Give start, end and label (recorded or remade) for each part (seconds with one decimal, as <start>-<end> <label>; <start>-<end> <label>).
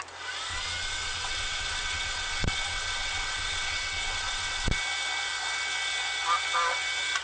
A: 0.0-0.5 recorded; 0.5-4.8 remade; 4.8-7.2 recorded